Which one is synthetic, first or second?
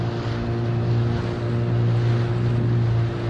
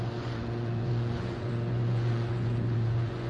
second